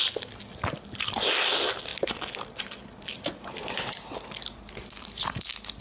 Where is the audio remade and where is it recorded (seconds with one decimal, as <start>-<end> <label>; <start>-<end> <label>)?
0.0-5.8 recorded